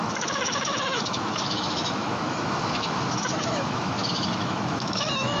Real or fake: fake